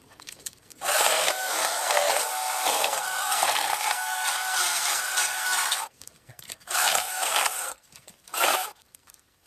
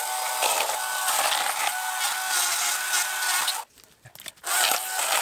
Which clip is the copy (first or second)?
first